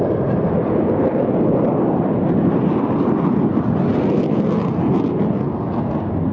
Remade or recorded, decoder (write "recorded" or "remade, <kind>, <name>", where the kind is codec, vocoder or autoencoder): recorded